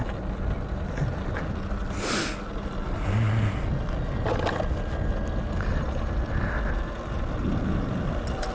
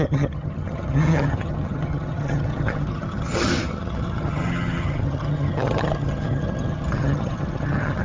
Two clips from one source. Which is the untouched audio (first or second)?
first